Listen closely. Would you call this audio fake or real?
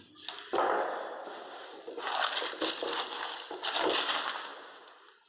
real